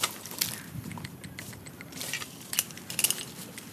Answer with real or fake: real